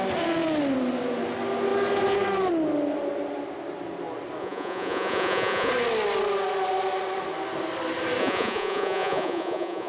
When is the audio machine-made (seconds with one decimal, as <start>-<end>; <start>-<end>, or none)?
4.4-5.7; 8.2-9.9